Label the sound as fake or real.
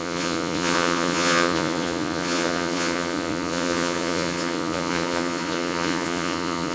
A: fake